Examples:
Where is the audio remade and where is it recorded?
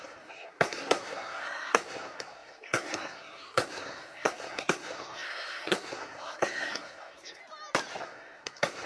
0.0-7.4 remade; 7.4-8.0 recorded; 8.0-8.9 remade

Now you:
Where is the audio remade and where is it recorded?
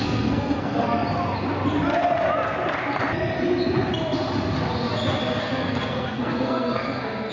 0.0-1.0 remade; 1.0-5.4 recorded; 5.4-7.3 remade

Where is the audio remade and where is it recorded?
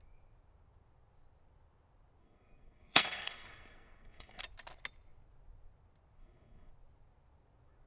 0.0-2.2 recorded; 2.2-4.4 remade; 4.4-6.2 recorded; 6.2-6.7 remade; 6.7-7.9 recorded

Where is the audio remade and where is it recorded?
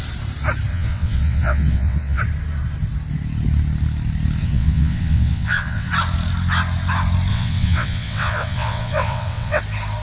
0.0-0.7 recorded; 0.7-2.2 remade; 2.2-4.4 recorded; 4.4-5.9 remade; 5.9-7.3 recorded; 7.3-9.6 remade; 9.6-10.0 recorded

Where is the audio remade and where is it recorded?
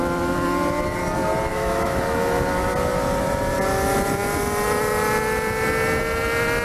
0.0-1.5 recorded; 1.5-2.0 remade; 2.0-6.6 recorded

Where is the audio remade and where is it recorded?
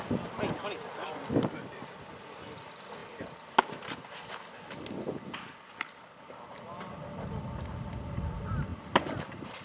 0.0-9.6 recorded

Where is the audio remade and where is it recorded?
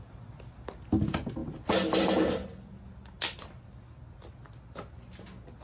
0.0-5.6 recorded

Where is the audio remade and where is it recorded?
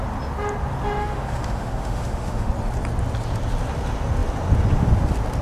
0.0-1.0 recorded; 1.0-2.5 remade; 2.5-5.4 recorded